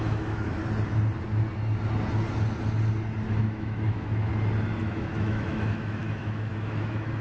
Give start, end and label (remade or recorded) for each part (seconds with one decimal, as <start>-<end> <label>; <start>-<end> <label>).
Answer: 0.0-0.6 remade; 0.6-3.3 recorded; 3.3-4.3 remade; 4.3-4.8 recorded; 4.8-7.2 remade